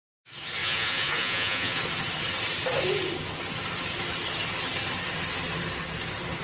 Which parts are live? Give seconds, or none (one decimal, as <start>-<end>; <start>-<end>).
0.0-0.6; 1.8-6.4